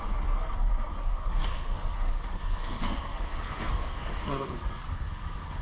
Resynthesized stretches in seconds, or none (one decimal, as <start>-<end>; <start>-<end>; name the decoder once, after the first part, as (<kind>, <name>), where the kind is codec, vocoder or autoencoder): 0.0-5.6 (codec, SNAC)